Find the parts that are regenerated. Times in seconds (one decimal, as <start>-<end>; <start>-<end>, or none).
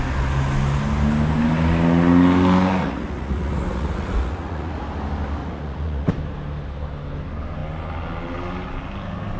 2.8-4.8; 5.4-6.1